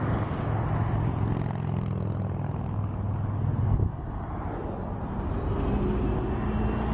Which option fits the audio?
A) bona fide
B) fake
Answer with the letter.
A